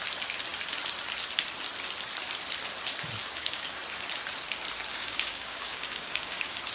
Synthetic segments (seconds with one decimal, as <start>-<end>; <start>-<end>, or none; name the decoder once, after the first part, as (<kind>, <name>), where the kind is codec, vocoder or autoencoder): 3.2-3.8 (codec, DAC); 4.9-6.7